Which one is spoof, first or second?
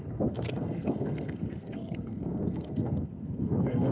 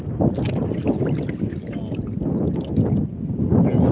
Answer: first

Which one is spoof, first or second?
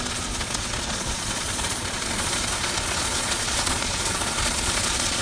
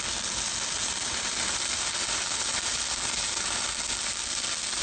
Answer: first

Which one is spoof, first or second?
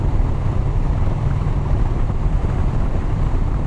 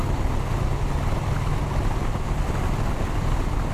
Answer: first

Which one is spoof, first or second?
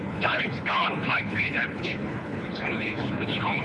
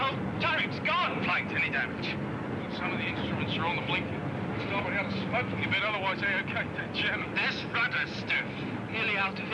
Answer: first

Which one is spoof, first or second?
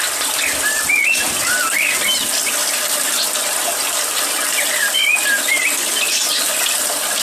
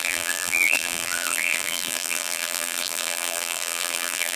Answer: second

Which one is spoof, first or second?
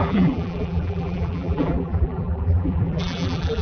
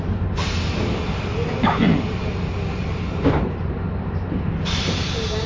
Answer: first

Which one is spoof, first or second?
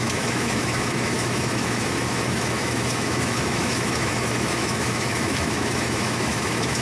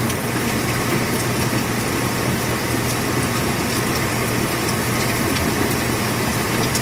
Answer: first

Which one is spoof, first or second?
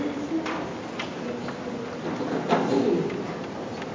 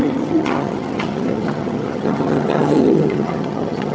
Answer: second